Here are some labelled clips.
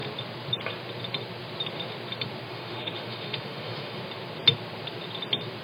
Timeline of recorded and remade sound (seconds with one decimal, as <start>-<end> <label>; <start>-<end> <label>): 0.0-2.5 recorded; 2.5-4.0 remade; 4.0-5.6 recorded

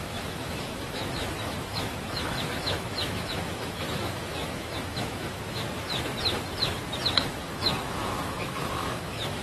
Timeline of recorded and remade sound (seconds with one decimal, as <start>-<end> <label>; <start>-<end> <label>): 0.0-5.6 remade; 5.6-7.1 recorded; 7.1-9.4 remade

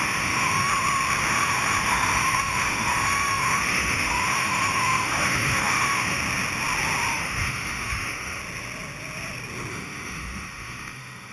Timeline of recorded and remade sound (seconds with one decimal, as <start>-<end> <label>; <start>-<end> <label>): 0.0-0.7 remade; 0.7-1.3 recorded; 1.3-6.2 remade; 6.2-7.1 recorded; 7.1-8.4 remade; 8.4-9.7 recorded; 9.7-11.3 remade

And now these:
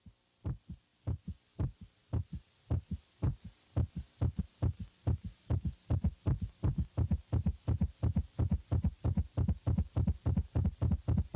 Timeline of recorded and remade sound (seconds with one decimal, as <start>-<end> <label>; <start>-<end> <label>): 0.0-11.4 recorded

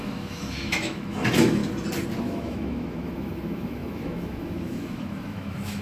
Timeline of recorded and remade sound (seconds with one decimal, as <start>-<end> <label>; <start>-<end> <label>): 0.0-1.6 remade; 1.6-2.2 recorded; 2.2-5.8 remade

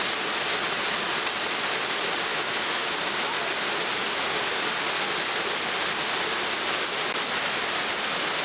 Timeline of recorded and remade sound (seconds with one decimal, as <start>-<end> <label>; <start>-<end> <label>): 0.0-2.3 recorded; 2.3-2.9 remade; 2.9-8.4 recorded